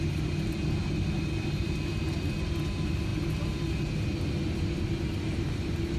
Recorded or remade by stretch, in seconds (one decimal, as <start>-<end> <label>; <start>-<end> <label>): 0.0-6.0 recorded